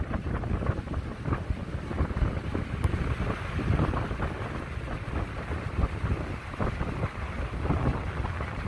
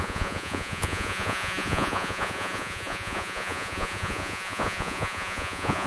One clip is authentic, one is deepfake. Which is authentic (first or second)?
first